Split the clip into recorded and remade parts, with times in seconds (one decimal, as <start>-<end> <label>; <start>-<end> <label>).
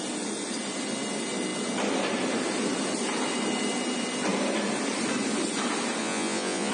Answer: 0.0-6.0 recorded; 6.0-6.7 remade